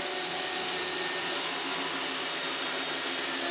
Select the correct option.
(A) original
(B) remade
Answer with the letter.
A